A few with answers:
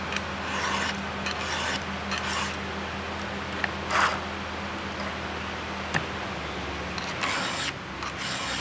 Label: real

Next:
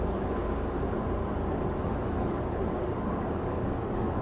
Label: fake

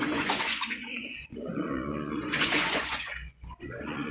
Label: fake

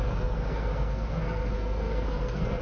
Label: fake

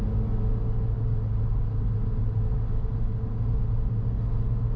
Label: real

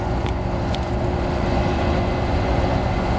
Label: fake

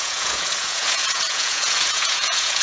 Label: fake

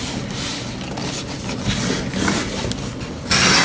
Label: real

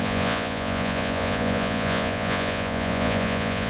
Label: fake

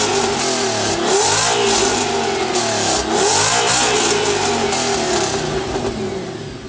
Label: real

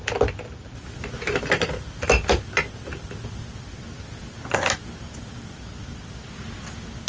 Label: real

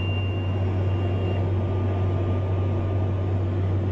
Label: real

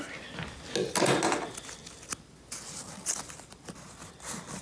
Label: real